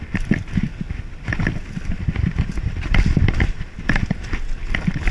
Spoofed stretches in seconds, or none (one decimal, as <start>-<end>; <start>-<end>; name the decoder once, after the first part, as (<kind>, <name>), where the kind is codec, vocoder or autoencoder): none